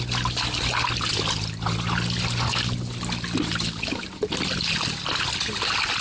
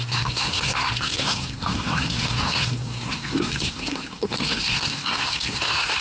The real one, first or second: first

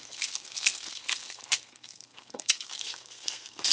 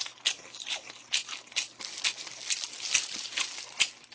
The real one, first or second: second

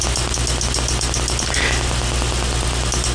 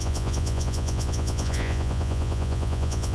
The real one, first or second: first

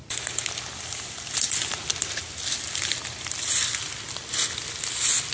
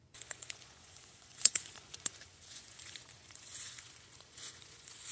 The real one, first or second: first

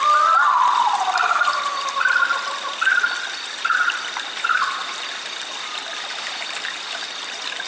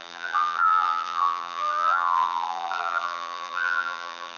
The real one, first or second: first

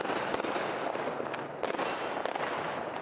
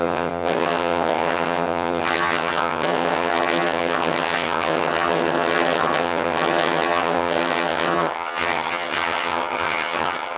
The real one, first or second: first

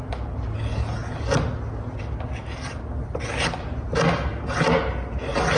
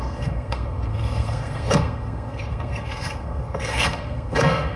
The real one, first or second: first